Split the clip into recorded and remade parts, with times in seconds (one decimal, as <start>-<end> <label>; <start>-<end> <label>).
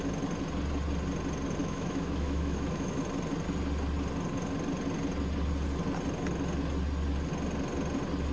0.0-1.6 recorded; 1.6-3.0 remade; 3.0-8.3 recorded